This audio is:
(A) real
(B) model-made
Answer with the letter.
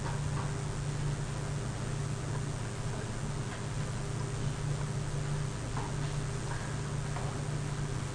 A